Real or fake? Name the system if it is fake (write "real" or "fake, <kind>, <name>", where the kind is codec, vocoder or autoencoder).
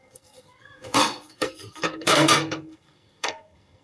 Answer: fake, codec, SNAC